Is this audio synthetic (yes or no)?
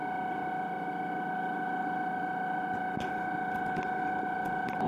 no